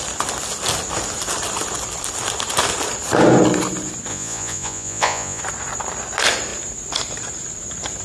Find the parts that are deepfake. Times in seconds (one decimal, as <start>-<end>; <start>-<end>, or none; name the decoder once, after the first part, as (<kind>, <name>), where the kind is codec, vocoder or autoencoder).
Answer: 4.1-5.4 (vocoder, Vocos)